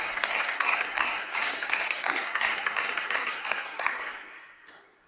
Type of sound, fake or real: fake